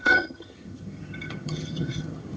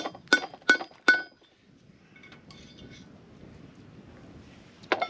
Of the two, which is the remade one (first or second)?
first